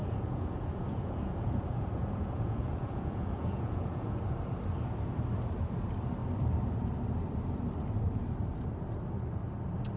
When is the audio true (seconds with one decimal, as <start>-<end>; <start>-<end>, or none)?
4.2-10.0